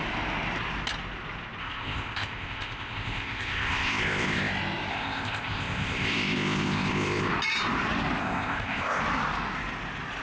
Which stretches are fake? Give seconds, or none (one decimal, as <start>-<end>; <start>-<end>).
1.6-4.5; 4.9-7.3; 8.2-9.0